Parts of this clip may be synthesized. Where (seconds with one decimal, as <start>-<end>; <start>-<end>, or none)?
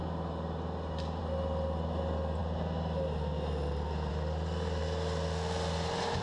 none